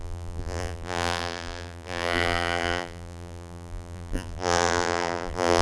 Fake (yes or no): yes